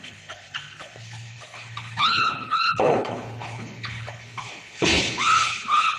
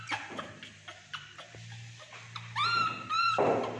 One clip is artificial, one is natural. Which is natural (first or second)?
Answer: second